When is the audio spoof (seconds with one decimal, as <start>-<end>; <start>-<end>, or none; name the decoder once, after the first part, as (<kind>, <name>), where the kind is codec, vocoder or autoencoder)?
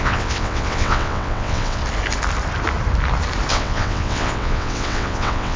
0.0-1.8 (vocoder, WaveNeXt); 3.5-5.6